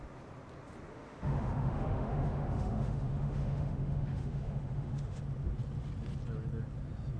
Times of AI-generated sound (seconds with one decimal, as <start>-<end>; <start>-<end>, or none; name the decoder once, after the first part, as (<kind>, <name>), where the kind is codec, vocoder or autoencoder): 0.9-5.2 (autoencoder, DAC-VAE)